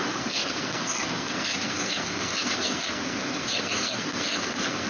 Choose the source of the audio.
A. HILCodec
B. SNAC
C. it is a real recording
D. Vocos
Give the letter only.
B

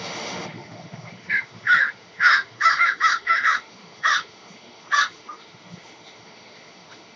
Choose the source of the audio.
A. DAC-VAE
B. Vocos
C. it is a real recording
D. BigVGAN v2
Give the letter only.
A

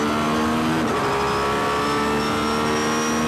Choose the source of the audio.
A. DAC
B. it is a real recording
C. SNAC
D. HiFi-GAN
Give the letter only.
B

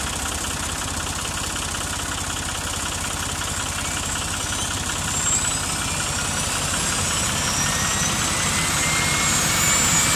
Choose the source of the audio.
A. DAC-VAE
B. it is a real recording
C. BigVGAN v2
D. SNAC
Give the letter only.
B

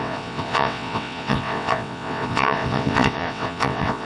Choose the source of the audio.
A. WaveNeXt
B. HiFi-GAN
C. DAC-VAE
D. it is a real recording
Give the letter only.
A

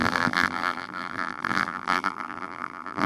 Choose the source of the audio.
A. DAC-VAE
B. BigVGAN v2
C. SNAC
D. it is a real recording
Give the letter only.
B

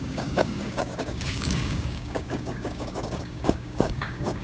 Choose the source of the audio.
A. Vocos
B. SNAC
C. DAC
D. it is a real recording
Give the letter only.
C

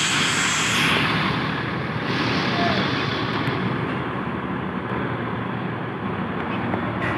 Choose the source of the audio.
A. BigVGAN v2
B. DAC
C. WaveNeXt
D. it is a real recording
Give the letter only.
D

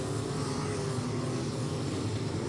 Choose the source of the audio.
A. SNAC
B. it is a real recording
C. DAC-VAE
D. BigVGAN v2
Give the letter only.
B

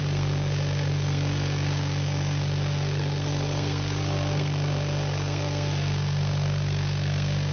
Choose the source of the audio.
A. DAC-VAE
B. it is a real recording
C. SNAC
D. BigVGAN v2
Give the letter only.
C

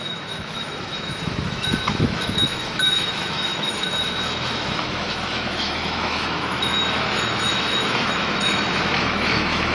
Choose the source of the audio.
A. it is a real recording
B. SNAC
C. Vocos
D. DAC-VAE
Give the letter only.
D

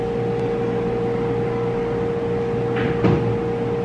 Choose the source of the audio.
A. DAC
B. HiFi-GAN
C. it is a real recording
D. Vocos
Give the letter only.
C